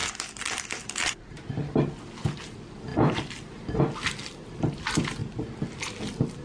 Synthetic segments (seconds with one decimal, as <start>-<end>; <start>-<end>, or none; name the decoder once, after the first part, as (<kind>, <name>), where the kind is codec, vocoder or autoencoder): 0.0-1.1 (vocoder, BigVGAN v2); 2.9-3.8